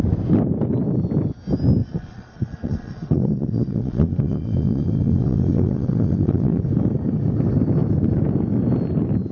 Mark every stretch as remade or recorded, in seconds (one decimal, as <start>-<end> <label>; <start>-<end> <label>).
0.0-1.8 recorded; 1.8-6.6 remade; 6.6-9.3 recorded